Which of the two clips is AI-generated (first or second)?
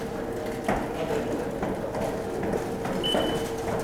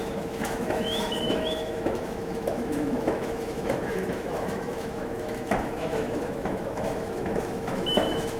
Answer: second